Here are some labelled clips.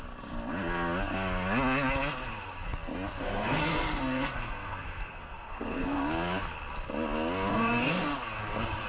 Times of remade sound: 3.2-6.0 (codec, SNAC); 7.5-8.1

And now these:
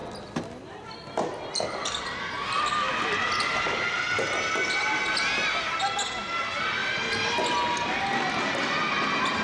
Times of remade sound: none